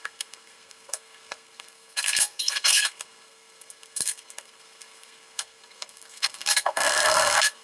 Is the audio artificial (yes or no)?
yes